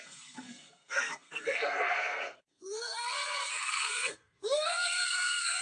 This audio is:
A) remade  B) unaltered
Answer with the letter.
A